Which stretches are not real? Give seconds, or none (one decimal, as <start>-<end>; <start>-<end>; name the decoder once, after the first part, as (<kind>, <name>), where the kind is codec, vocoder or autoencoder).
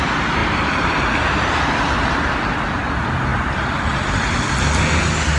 0.4-2.7 (vocoder, BigVGAN v2); 3.3-4.8